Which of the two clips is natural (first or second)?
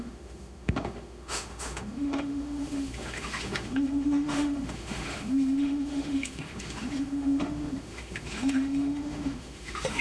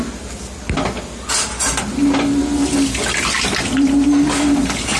second